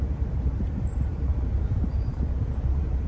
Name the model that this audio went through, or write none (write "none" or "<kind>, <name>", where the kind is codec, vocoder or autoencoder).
vocoder, BigVGAN v2